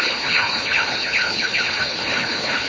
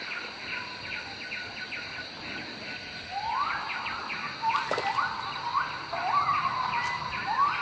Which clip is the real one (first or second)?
second